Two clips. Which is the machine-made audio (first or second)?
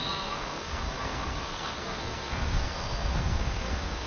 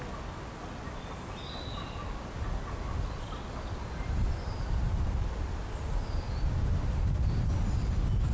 first